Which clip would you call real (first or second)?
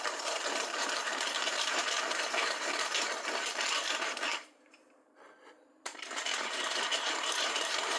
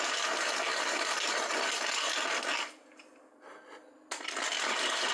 second